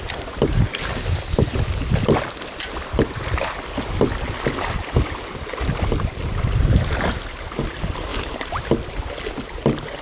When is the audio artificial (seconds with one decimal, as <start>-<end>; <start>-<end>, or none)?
none